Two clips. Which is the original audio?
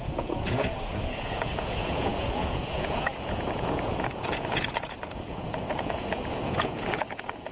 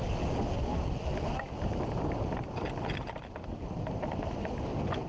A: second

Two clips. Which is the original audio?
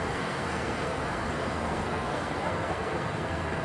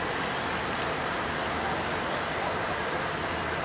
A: second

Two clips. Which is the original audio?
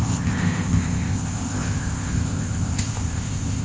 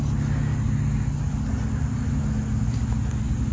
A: second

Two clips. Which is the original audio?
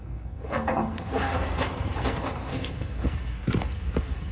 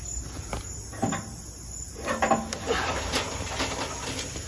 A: second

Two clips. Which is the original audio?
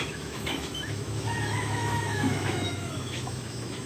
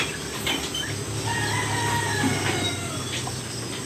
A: second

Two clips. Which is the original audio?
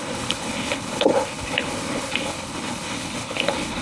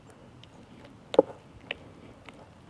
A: second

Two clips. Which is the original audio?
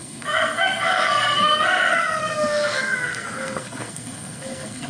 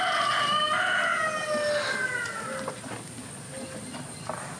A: second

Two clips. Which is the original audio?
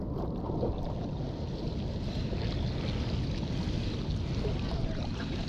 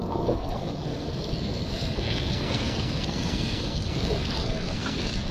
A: first